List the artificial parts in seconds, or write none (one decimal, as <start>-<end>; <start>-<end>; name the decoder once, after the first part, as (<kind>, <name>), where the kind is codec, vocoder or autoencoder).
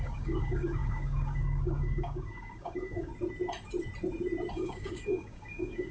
0.0-3.1 (codec, DAC); 4.5-5.9